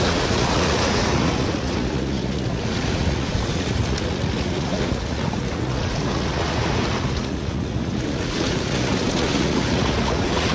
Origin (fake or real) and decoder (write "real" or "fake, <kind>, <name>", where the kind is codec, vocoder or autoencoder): fake, vocoder, Vocos